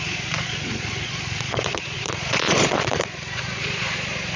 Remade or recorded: remade